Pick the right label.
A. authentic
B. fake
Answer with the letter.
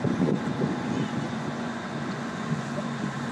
B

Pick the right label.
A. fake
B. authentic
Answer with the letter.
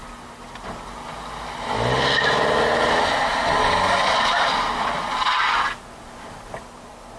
B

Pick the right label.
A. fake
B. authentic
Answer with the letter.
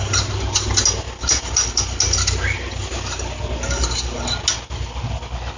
B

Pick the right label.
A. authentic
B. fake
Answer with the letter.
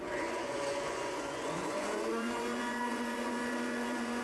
B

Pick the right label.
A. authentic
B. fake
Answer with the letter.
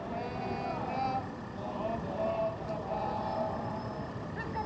A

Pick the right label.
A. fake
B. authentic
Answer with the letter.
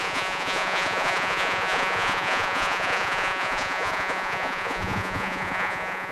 A